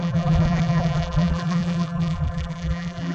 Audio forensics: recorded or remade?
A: remade